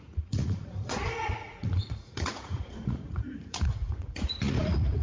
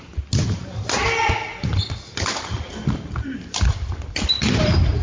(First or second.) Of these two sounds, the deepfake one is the first